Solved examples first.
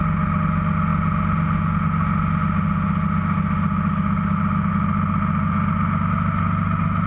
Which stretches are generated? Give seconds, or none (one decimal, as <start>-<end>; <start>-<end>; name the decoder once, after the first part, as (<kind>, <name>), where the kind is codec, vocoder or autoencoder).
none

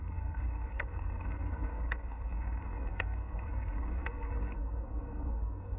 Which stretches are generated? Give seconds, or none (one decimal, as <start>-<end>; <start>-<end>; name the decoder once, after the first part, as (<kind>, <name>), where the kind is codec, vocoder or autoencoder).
0.0-5.8 (codec, SNAC)

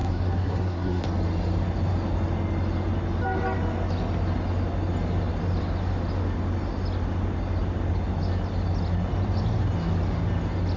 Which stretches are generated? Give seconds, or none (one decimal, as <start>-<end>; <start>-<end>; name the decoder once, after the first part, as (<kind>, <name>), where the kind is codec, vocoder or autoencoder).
0.0-1.0 (codec, SNAC)

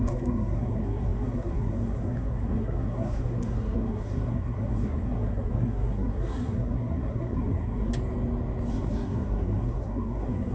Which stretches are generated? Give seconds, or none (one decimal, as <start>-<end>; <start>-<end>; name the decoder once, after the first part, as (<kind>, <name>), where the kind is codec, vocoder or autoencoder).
0.0-7.9 (codec, SNAC); 8.7-10.5